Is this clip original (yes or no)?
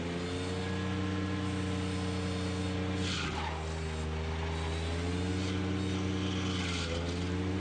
yes